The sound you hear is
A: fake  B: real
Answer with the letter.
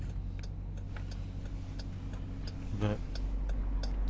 B